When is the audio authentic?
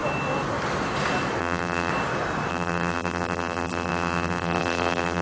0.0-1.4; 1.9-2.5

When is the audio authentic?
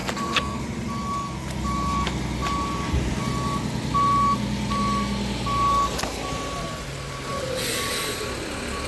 0.6-8.9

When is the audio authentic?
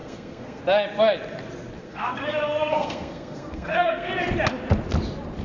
0.6-1.8; 4.1-5.4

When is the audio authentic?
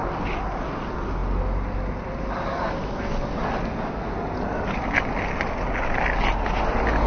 0.0-7.1